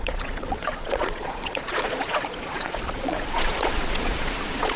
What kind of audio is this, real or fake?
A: fake